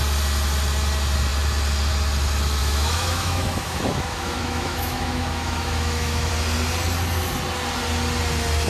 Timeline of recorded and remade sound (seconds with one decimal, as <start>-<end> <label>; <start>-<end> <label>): 0.0-2.6 recorded; 2.6-6.3 remade; 6.3-8.7 recorded